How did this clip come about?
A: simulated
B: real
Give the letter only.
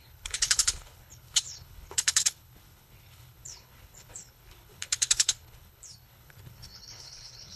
A